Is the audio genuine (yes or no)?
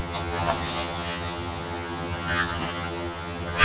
no